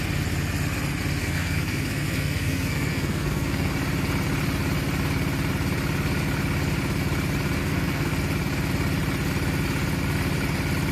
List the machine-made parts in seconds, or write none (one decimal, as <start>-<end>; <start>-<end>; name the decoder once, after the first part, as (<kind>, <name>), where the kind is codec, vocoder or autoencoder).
1.2-3.7 (codec, SNAC); 7.6-8.1